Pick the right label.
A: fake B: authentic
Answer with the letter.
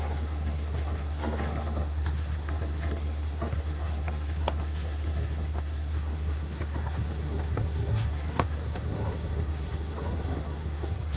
A